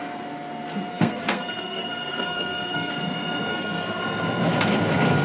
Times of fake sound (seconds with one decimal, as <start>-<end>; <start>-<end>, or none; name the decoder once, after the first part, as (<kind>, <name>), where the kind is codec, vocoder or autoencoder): 0.9-2.9 (codec, SNAC); 3.5-4.0